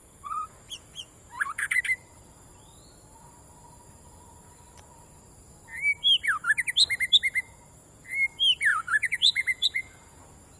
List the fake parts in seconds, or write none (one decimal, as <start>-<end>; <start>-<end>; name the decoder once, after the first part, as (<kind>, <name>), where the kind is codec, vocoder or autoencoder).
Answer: 0.0-1.8 (vocoder, Vocos); 8.7-10.2

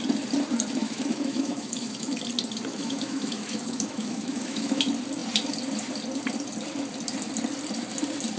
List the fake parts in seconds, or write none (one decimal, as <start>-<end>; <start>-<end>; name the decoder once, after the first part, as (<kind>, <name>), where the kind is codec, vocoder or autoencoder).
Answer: 0.8-2.2 (autoencoder, DAC-VAE); 2.7-4.8

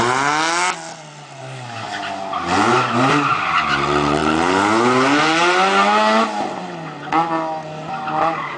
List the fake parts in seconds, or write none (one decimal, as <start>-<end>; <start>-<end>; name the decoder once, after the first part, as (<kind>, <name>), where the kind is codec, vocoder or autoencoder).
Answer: none

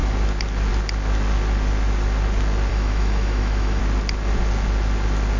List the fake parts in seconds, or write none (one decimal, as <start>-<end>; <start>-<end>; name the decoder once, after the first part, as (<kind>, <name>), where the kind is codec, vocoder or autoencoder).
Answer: 2.7-3.8 (autoencoder, DAC-VAE)